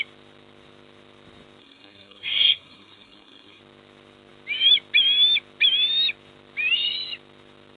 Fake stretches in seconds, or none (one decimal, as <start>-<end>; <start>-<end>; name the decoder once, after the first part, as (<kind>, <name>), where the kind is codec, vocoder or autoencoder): 1.6-3.6 (codec, SNAC)